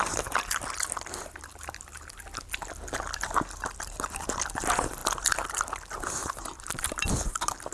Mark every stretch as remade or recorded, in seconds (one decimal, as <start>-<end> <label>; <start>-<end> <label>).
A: 0.0-6.2 recorded; 6.2-7.1 remade; 7.1-7.7 recorded